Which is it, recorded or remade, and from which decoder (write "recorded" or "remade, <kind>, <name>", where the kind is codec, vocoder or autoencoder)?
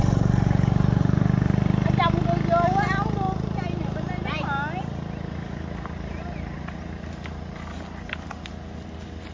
recorded